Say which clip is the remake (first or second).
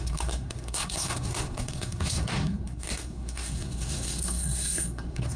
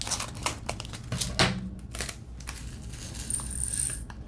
first